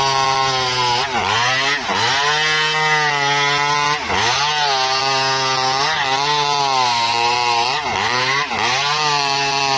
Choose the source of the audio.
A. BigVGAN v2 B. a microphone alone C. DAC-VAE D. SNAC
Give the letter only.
B